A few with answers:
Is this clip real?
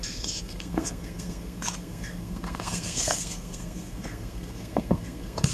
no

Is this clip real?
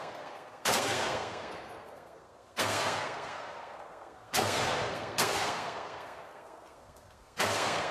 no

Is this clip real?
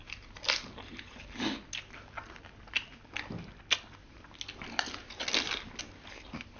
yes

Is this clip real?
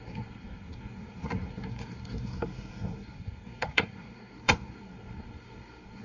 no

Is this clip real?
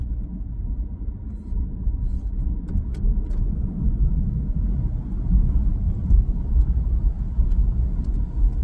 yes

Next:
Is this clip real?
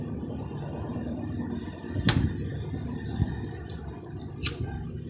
yes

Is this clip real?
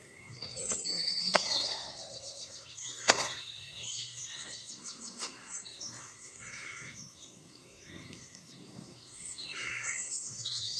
no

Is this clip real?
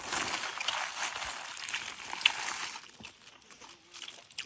yes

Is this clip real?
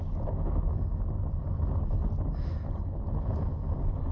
yes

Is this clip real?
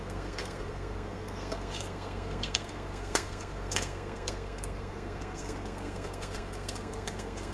no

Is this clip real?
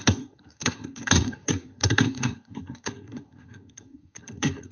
no